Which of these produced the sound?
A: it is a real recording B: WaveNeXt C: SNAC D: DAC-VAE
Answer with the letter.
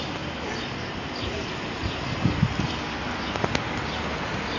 A